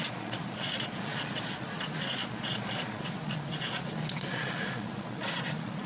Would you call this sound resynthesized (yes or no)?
yes